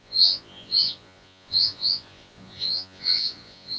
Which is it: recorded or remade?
remade